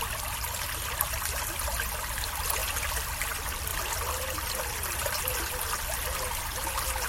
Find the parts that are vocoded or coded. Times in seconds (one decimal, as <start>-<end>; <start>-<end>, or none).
none